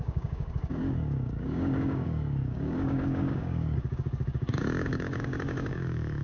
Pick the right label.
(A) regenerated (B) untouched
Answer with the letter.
A